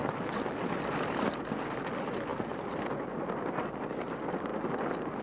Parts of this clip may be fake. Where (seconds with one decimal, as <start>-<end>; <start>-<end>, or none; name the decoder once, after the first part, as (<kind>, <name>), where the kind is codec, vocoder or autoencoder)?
1.8-2.3 (vocoder, BigVGAN v2); 3.2-4.5